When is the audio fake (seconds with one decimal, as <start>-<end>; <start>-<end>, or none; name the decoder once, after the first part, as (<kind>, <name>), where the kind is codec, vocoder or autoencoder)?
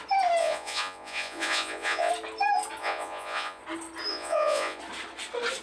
0.4-2.1 (vocoder, Vocos); 2.8-3.6; 4.1-4.8